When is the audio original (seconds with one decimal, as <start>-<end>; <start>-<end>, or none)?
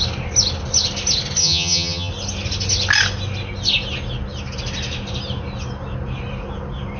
0.0-1.4; 2.1-7.0